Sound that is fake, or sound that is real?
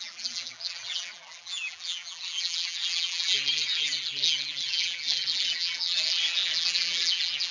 fake